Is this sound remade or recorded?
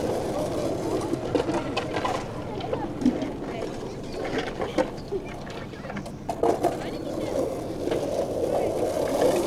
recorded